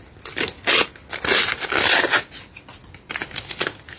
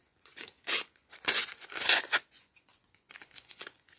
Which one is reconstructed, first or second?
second